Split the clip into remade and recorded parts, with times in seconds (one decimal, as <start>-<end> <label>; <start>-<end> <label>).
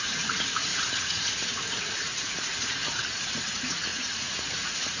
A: 0.0-5.0 remade